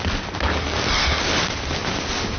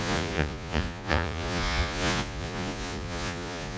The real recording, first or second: first